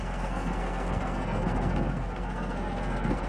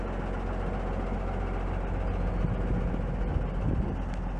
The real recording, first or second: second